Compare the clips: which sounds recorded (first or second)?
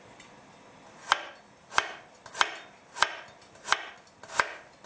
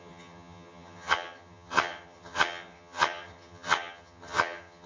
first